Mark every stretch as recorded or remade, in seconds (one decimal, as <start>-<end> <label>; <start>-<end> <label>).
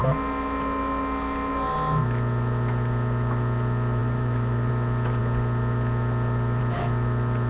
0.0-4.0 recorded; 4.0-4.7 remade; 4.7-7.5 recorded